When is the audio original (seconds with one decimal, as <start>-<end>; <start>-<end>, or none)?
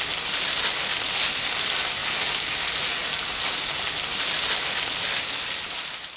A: 0.0-6.2